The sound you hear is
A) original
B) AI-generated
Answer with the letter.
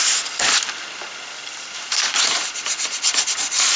A